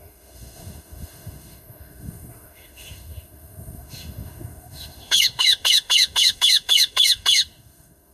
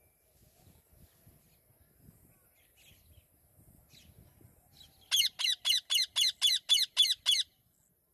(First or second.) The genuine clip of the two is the second